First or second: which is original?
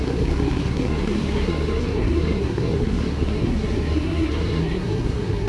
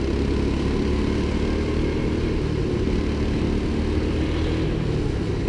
second